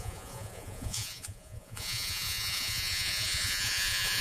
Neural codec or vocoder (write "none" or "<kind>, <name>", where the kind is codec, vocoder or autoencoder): vocoder, Vocos